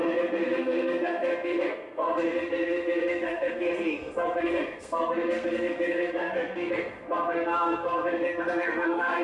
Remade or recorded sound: remade